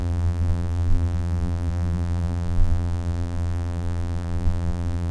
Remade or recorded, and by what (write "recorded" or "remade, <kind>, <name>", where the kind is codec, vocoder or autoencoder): remade, vocoder, BigVGAN v2